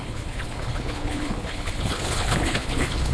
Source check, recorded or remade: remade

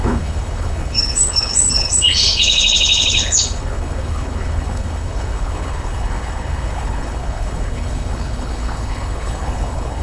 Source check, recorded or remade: remade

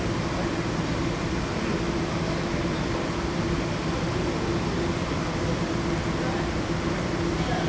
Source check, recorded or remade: recorded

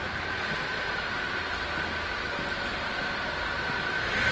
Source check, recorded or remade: recorded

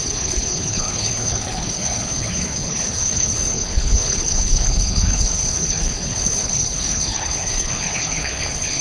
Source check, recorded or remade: remade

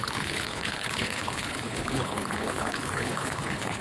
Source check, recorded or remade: remade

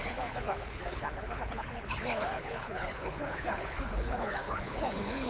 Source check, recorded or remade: remade